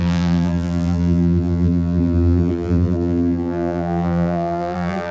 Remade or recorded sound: remade